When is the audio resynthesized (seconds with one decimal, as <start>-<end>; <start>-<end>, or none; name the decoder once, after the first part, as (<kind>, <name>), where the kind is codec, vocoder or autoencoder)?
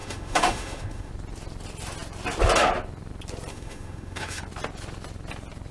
0.0-1.1 (autoencoder, DAC-VAE); 3.5-4.4